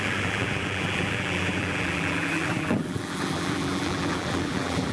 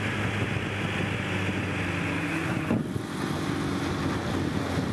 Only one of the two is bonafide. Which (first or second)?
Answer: second